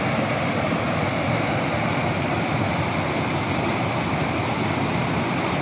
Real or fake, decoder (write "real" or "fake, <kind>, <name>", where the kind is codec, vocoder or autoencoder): real